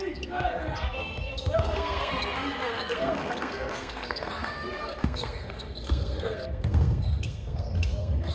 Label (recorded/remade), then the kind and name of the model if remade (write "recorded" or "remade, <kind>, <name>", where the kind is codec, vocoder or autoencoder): remade, codec, SNAC